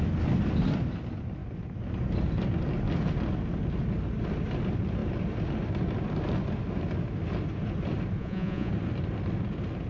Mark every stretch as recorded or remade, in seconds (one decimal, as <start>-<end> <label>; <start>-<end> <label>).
0.0-8.2 recorded; 8.2-8.7 remade; 8.7-9.9 recorded